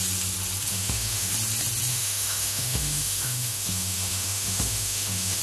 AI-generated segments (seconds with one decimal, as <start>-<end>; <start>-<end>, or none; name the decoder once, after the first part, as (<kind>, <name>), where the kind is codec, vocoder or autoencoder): 0.7-1.3 (autoencoder, DAC-VAE); 1.9-5.4